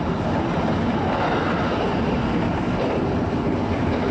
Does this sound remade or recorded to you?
recorded